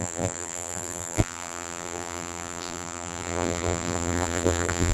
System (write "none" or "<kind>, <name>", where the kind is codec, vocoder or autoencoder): vocoder, BigVGAN v2